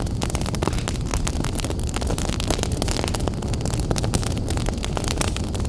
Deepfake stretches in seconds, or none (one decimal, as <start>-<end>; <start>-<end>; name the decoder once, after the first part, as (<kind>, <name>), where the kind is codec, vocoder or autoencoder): none